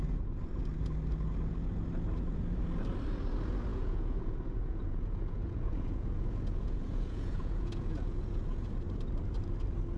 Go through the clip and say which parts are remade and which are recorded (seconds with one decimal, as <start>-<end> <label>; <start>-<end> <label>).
0.0-3.7 recorded; 3.7-8.7 remade; 8.7-10.0 recorded

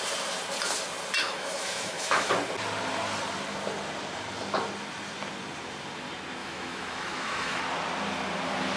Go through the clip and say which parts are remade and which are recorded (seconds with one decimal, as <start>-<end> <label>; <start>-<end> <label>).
0.0-1.2 recorded; 1.2-2.3 remade; 2.3-6.4 recorded; 6.4-7.6 remade; 7.6-8.8 recorded

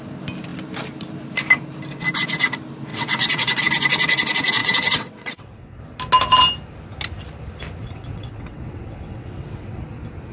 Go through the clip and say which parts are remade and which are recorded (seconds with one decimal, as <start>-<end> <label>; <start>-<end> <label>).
0.0-2.9 recorded; 2.9-3.6 remade; 3.6-4.6 recorded; 4.6-5.8 remade; 5.8-7.8 recorded; 7.8-9.8 remade; 9.8-10.3 recorded

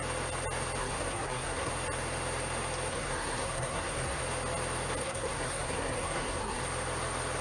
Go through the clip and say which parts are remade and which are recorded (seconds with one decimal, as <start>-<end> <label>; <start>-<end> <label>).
0.0-0.8 recorded; 0.8-1.7 remade; 1.7-2.9 recorded; 2.9-4.2 remade; 4.2-5.0 recorded; 5.0-6.6 remade; 6.6-7.4 recorded

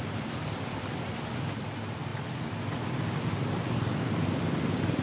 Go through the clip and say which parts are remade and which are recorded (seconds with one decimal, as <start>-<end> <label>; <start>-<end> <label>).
0.0-5.0 recorded

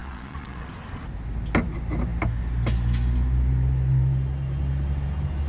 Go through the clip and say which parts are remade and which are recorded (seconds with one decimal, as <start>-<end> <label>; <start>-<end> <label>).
0.0-0.7 remade; 0.7-5.5 recorded

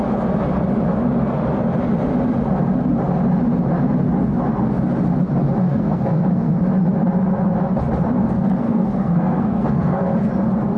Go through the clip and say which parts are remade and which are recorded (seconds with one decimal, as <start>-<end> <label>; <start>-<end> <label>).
0.0-5.6 recorded; 5.6-6.6 remade; 6.6-8.2 recorded; 8.2-10.3 remade; 10.3-10.8 recorded

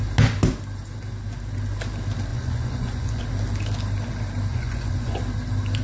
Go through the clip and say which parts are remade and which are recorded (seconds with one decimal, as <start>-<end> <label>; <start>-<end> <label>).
0.0-2.3 recorded; 2.3-3.2 remade; 3.2-4.5 recorded; 4.5-5.2 remade; 5.2-5.8 recorded